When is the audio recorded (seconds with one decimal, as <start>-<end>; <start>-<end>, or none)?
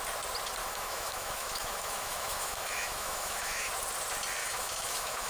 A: 0.0-0.6; 3.7-4.4